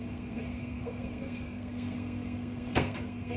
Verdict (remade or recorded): remade